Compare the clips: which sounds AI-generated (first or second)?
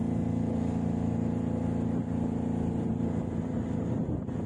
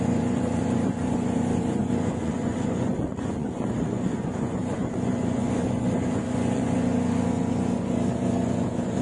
second